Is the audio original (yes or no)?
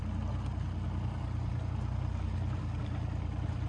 yes